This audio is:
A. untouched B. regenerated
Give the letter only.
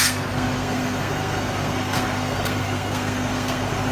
B